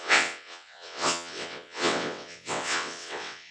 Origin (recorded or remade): remade